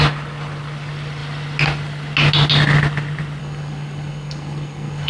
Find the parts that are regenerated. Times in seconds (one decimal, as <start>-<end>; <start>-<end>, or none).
3.4-5.1